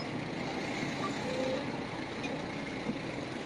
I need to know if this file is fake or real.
real